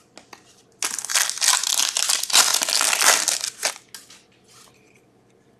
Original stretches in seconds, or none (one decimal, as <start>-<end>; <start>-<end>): 0.0-5.6